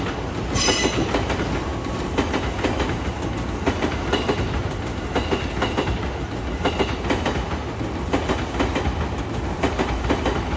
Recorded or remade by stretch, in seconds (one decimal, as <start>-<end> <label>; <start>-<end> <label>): 0.0-10.6 recorded